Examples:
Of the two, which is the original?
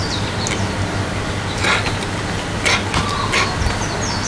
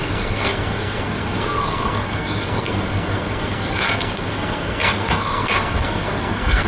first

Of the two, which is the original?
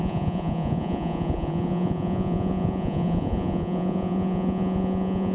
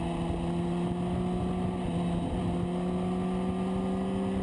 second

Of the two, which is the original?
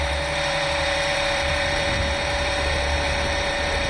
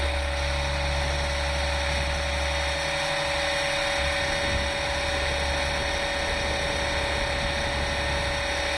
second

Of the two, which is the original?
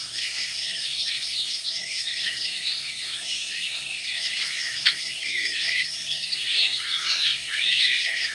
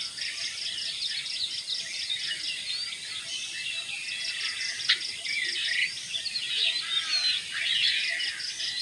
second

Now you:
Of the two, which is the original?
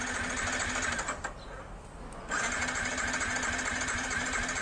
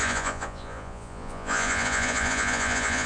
first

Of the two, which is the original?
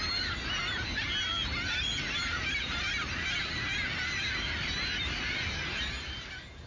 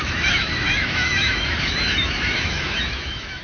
first